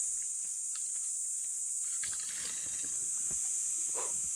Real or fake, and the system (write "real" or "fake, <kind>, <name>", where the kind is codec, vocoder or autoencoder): real